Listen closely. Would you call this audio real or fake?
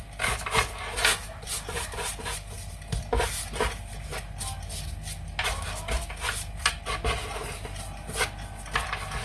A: real